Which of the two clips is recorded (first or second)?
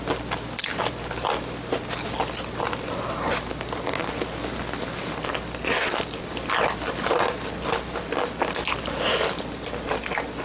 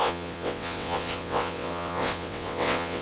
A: first